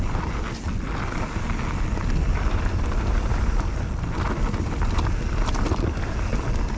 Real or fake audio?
real